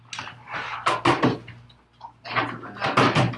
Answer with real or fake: real